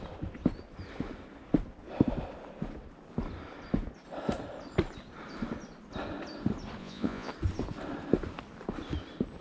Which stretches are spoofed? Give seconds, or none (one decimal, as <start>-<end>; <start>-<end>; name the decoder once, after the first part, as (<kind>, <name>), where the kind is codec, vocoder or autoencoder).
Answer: 6.8-7.3 (vocoder, Vocos)